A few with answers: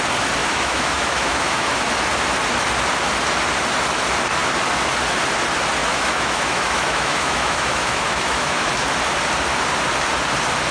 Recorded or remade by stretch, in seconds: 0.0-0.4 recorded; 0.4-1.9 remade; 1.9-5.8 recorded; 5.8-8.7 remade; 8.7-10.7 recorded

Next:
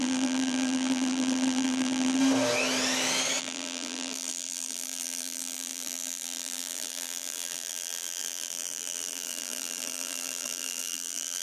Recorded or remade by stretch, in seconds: 0.0-2.2 remade; 2.2-3.4 recorded; 3.4-11.4 remade

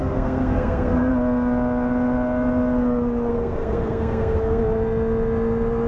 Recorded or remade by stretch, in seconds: 0.0-1.1 remade; 1.1-3.3 recorded; 3.3-4.6 remade; 4.6-5.9 recorded

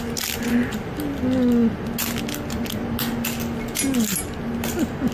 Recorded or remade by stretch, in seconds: 0.0-5.1 recorded